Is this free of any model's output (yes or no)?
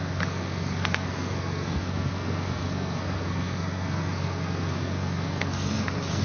no